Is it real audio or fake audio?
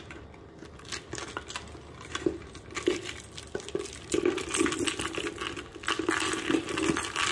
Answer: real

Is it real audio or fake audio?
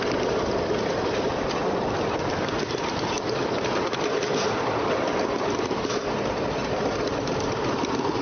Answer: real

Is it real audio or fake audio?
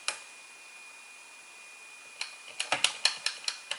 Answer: real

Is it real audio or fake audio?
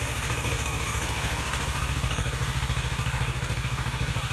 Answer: fake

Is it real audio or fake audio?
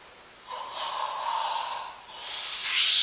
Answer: real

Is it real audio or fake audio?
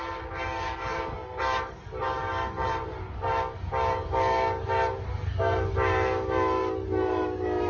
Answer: fake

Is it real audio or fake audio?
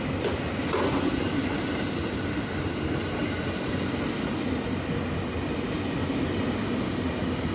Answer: real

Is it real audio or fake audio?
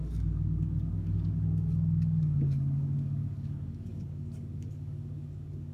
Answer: fake